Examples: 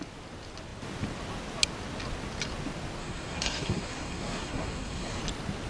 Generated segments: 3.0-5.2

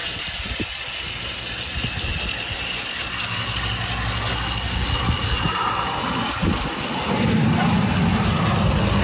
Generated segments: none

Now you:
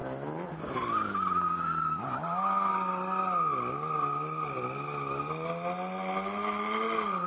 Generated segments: none

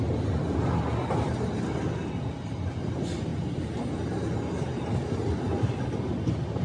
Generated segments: none

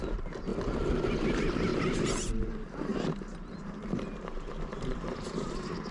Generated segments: 0.0-0.5; 1.2-1.7; 2.5-5.9

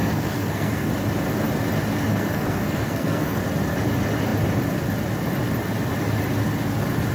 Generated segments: 0.0-0.9; 2.1-3.4

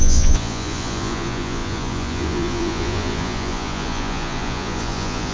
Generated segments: 0.0-5.3

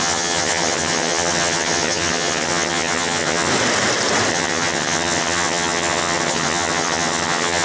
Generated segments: 0.0-3.5; 4.3-7.6